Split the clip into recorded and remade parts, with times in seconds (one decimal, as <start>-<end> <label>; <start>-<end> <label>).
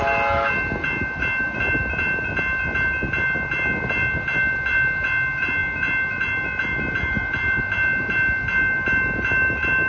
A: 0.0-9.9 recorded